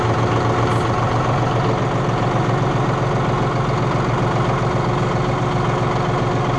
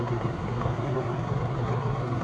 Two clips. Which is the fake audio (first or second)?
second